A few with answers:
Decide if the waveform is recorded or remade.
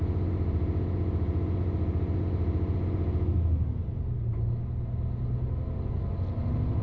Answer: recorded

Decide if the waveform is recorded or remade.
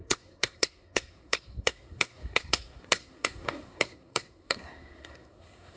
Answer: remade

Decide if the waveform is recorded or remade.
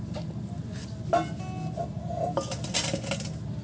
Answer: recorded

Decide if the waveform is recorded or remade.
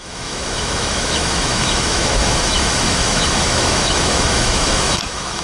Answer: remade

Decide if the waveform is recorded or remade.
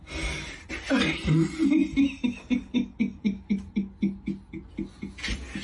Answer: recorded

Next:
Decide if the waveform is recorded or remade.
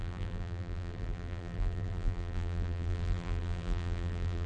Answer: remade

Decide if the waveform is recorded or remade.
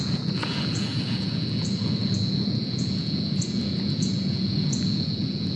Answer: remade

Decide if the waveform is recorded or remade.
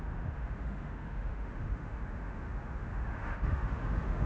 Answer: remade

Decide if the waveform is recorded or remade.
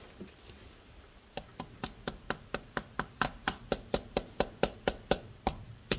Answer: remade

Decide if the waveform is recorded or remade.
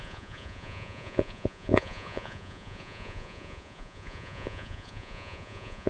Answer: remade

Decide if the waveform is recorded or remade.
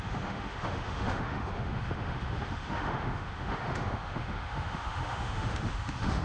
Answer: remade